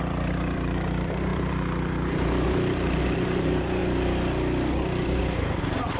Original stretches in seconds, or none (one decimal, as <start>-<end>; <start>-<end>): 3.8-5.2